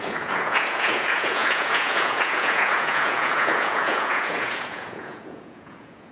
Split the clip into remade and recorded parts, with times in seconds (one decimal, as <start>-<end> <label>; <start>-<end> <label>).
0.0-6.1 remade